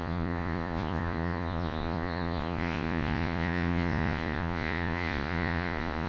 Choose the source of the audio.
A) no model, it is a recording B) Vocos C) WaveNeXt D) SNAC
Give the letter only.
B